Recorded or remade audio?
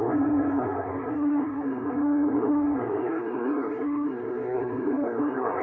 remade